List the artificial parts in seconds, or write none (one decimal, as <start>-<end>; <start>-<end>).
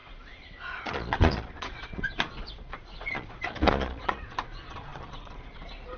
0.0-6.0